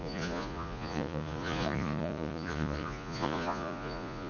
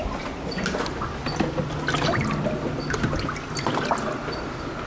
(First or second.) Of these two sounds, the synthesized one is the first